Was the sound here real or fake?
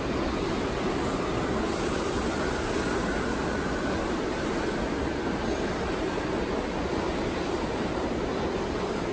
real